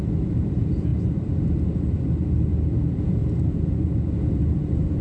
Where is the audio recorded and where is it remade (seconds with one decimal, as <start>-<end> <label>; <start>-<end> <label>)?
0.0-3.2 remade; 3.2-3.7 recorded; 3.7-5.0 remade